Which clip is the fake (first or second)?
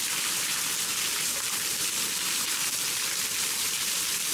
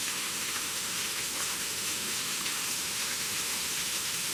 second